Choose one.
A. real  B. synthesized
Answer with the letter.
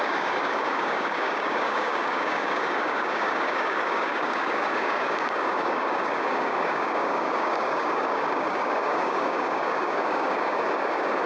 B